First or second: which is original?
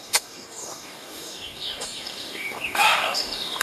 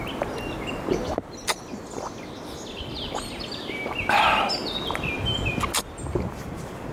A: second